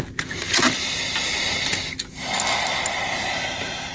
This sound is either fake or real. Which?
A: real